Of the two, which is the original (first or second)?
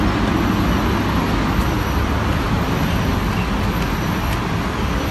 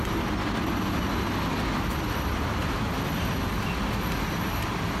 first